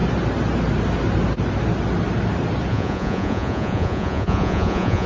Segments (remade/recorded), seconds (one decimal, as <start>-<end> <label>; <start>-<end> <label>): 0.0-2.7 recorded; 2.7-5.1 remade